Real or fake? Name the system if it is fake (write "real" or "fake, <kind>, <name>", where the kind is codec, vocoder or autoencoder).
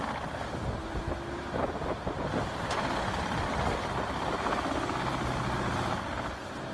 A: real